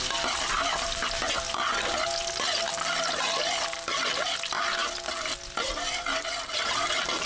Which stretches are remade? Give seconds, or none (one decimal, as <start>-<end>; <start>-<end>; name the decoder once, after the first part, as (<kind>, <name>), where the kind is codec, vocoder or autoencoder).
none